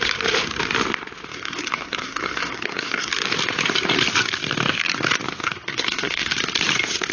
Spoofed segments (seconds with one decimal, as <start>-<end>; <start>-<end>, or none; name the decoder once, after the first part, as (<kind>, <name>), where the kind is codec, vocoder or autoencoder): 1.3-3.1 (codec, SNAC); 5.4-6.3